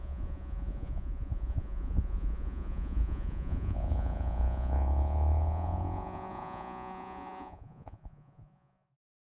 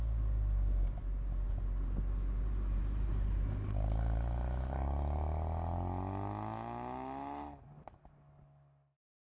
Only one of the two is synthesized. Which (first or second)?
first